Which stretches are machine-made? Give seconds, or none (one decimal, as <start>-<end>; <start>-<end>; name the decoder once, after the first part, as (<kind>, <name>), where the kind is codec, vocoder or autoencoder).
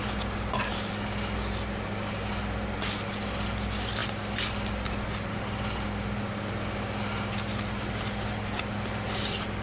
none